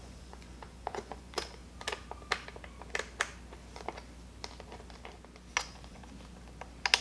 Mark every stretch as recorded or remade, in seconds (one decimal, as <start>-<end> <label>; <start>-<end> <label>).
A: 0.0-1.6 remade; 1.6-5.6 recorded; 5.6-6.0 remade; 6.0-7.0 recorded